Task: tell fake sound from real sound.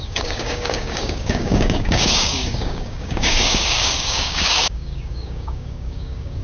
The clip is fake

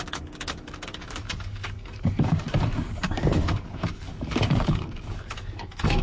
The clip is fake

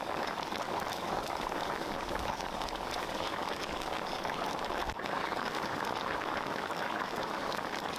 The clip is fake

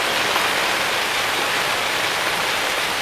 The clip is real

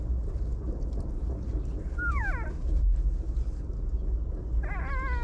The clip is real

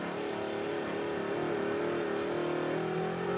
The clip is real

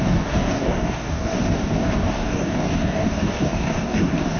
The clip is fake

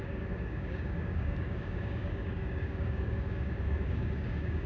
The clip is fake